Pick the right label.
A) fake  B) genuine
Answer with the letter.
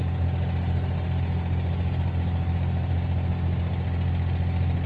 B